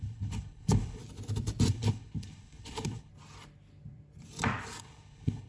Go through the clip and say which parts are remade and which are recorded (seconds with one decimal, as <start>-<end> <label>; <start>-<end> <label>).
0.0-1.0 remade; 1.0-1.7 recorded; 1.7-3.1 remade; 3.1-4.8 recorded; 4.8-5.5 remade